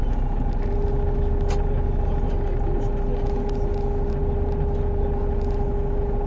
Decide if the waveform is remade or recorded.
recorded